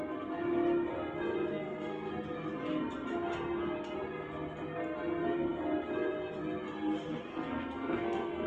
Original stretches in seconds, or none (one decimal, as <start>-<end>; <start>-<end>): 0.0-1.5; 2.1-7.3

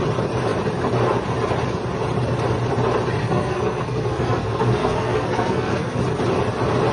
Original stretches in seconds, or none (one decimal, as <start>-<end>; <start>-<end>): 0.0-3.2; 6.0-6.9